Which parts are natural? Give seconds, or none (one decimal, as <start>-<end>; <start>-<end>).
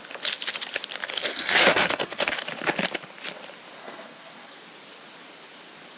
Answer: 0.0-1.3; 2.3-3.8; 4.6-6.0